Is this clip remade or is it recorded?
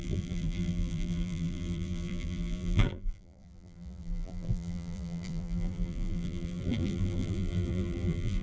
remade